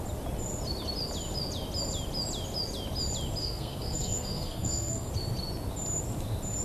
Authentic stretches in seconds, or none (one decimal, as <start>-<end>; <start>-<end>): 0.0-3.4; 5.1-6.6